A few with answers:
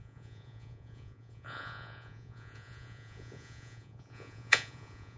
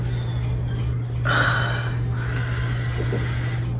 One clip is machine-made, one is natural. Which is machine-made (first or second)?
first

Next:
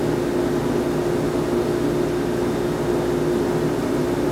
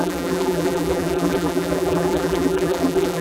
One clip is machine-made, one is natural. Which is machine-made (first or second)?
second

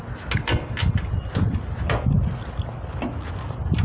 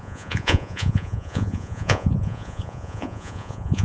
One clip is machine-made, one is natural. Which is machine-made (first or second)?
second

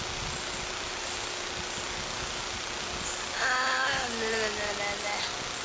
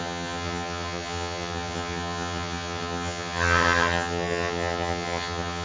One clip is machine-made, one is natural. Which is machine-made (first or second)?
second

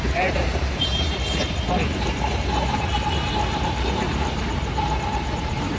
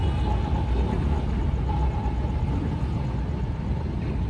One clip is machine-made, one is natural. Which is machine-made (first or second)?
first